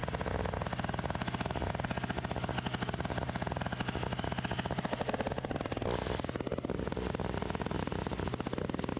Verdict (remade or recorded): recorded